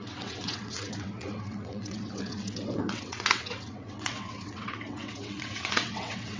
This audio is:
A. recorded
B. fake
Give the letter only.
B